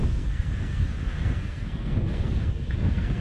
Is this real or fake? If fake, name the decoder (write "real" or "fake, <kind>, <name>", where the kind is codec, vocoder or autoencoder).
fake, codec, SNAC